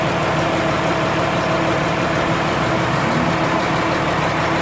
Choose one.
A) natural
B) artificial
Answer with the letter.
A